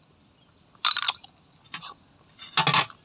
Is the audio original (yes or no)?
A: yes